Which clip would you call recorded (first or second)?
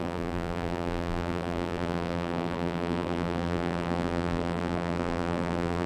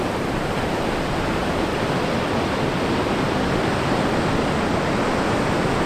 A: second